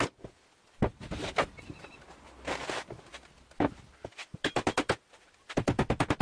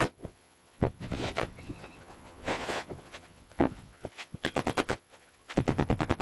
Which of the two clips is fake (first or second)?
second